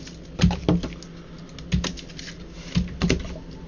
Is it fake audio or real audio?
real